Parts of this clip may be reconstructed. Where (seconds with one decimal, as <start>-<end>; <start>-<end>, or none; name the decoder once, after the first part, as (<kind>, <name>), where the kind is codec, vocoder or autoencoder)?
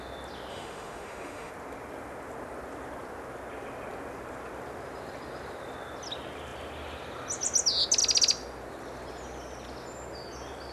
0.5-1.5 (autoencoder, DAC-VAE)